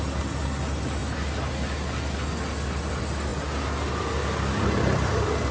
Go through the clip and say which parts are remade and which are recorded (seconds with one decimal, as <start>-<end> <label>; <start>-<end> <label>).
0.0-5.5 recorded